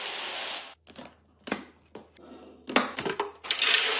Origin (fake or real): real